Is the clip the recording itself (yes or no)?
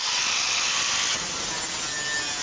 yes